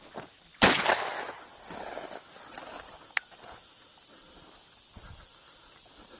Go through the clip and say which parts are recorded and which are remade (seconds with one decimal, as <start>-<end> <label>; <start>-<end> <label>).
0.0-6.2 recorded

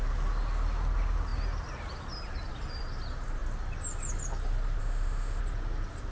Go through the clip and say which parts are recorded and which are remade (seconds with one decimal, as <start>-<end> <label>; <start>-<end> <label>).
0.0-4.8 recorded; 4.8-5.4 remade; 5.4-6.1 recorded

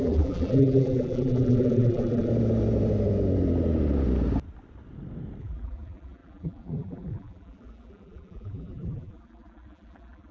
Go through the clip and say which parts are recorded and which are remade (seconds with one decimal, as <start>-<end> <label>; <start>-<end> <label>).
0.0-2.3 remade; 2.3-5.4 recorded; 5.4-10.3 remade